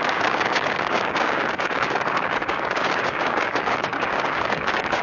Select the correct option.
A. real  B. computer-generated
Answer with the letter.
B